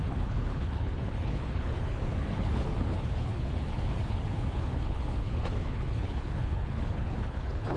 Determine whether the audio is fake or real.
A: fake